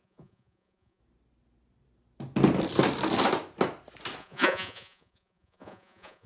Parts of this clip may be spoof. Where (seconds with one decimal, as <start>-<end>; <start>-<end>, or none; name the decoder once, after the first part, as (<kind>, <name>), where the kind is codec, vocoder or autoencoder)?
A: 0.0-1.0 (vocoder, Vocos); 4.2-6.3

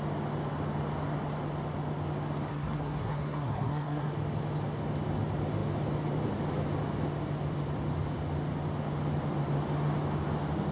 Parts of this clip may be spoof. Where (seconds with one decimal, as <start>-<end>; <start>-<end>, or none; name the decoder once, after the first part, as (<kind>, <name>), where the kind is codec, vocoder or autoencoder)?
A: 2.5-4.1 (codec, SNAC)

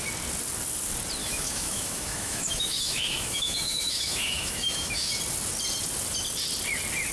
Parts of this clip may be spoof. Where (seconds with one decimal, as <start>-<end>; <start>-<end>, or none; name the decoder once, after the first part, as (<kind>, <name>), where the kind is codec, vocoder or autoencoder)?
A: 1.2-5.1 (autoencoder, DAC-VAE)

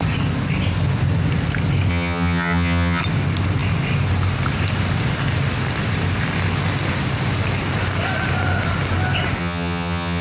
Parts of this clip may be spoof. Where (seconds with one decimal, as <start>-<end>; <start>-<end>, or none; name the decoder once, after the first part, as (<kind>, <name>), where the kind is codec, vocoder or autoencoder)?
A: 1.9-3.0 (vocoder, HiFi-GAN); 9.4-10.2

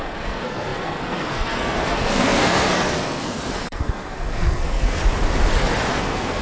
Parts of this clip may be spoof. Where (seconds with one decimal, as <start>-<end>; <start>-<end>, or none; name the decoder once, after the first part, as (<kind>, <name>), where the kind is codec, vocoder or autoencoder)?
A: 0.0-5.0 (codec, SNAC); 5.9-6.4

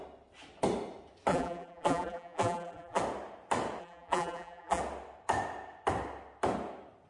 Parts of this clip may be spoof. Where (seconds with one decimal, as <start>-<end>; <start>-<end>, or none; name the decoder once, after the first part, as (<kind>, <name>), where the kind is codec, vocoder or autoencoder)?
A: 1.3-3.0 (vocoder, BigVGAN v2); 3.8-4.8

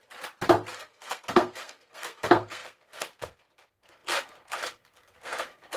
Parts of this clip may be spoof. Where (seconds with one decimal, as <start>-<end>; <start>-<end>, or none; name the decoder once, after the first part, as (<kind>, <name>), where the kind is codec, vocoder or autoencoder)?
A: 0.8-5.8 (codec, SNAC)

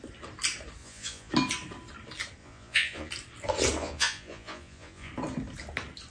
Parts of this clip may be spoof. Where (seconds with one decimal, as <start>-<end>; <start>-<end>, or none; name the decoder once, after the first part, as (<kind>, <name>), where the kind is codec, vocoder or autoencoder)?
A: 0.8-1.3 (vocoder, Vocos); 2.4-3.1; 3.8-5.1